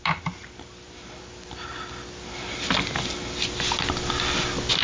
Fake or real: real